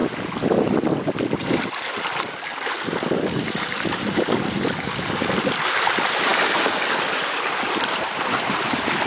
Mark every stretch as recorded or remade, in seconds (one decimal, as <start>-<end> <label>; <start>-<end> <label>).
0.0-9.1 recorded